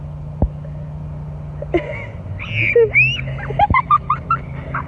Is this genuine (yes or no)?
yes